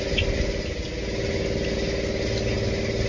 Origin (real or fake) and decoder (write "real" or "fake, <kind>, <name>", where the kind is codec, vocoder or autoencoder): real